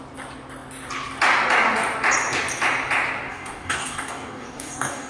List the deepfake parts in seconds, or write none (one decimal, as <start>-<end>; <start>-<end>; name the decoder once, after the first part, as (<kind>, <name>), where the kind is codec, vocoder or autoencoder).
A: 3.3-5.1 (codec, DAC)